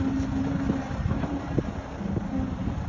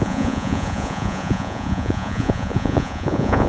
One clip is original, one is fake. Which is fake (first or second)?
second